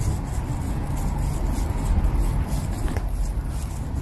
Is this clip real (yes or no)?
yes